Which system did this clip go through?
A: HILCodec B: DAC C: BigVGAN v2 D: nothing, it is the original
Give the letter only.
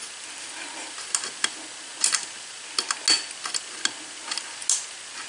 D